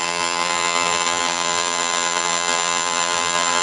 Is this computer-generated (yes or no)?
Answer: yes